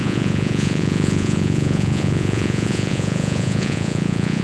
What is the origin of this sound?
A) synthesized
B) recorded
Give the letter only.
A